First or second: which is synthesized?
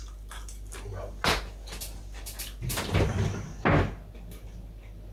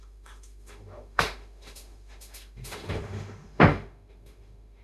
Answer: second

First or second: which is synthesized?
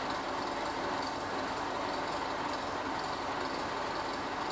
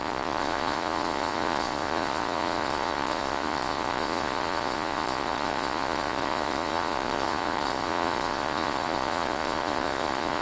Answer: second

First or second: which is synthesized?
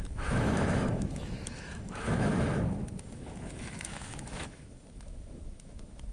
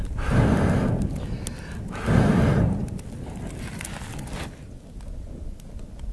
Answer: first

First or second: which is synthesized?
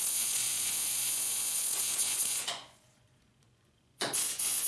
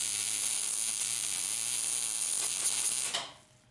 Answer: first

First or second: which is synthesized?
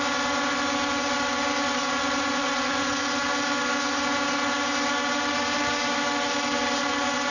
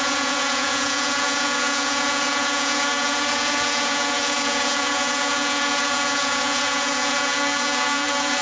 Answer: second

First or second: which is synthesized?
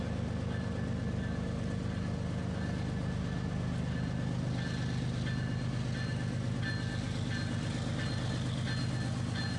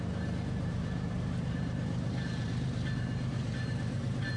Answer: second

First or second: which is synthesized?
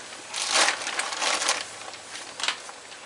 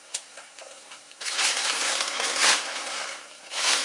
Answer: second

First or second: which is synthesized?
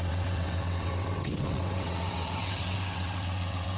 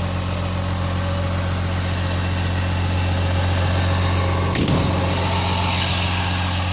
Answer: first